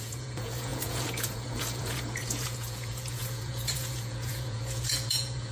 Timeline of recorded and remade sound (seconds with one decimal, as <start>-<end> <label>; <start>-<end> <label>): 0.0-5.5 remade